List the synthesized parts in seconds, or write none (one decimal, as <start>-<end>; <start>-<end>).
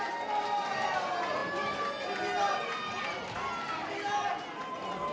none